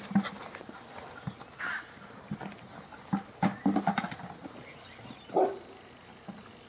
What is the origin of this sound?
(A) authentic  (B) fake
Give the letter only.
A